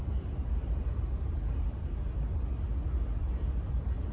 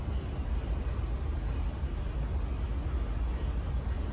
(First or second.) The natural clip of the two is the second